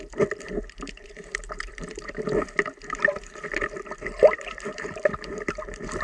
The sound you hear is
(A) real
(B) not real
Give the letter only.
A